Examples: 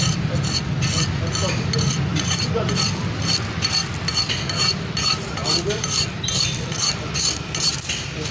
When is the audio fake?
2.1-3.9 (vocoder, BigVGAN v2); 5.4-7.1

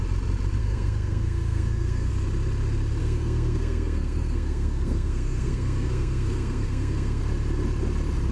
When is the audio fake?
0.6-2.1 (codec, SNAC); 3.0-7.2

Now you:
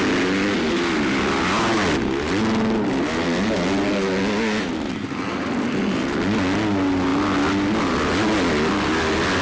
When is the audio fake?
none